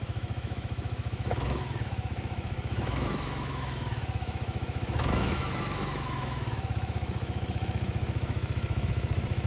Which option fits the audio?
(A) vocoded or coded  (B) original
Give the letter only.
A